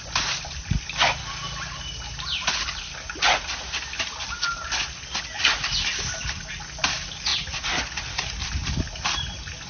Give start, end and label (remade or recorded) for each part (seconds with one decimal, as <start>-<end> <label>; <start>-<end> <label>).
0.0-9.7 recorded